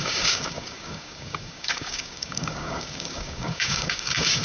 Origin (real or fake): fake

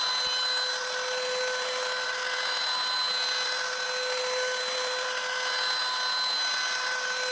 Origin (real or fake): real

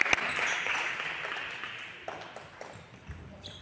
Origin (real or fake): real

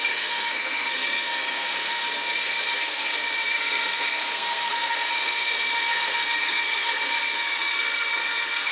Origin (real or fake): fake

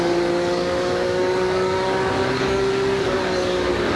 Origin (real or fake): fake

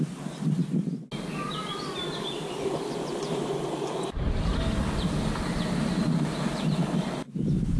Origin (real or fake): real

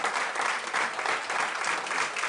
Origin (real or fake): real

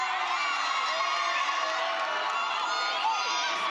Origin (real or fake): real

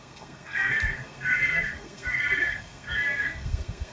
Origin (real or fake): fake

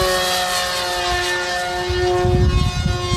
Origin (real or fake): real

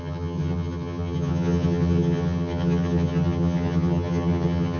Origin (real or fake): fake